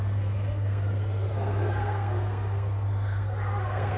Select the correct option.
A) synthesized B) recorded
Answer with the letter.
A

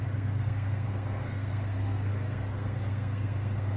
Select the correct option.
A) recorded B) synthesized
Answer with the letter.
B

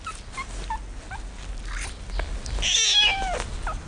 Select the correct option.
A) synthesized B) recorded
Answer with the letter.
B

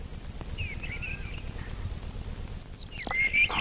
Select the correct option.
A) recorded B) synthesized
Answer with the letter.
A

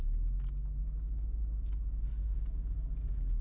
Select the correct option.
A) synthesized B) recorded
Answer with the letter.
B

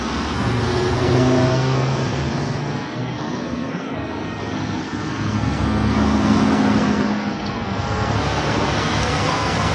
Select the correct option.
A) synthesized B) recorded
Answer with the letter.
A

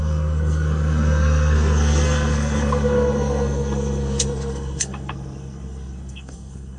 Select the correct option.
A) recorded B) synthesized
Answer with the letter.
B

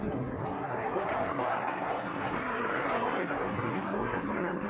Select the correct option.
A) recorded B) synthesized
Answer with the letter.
B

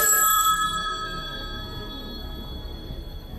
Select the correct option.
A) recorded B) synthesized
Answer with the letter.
B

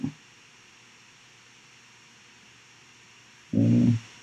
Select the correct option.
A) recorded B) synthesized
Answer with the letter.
A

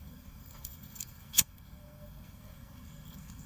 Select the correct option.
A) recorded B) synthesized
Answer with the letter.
B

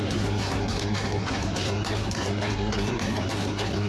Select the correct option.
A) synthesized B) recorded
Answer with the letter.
A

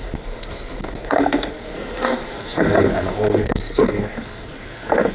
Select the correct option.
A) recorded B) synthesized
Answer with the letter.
B